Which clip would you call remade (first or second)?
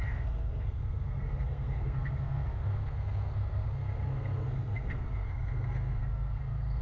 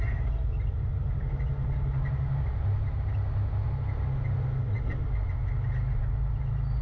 first